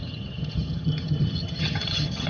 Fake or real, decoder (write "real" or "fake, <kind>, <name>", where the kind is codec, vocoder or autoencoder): fake, vocoder, HiFi-GAN